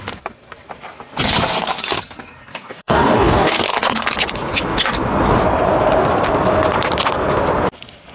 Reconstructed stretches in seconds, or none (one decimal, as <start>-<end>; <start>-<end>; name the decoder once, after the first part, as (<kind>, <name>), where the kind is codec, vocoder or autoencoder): 2.5-3.6 (codec, DAC)